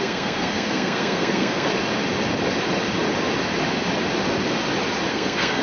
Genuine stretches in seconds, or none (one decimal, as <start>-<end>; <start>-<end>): 1.7-5.1